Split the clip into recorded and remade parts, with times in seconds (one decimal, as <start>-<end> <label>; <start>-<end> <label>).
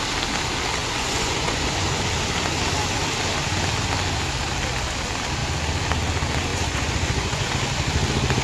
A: 0.0-0.8 recorded; 0.8-2.1 remade; 2.1-6.5 recorded; 6.5-7.5 remade; 7.5-8.4 recorded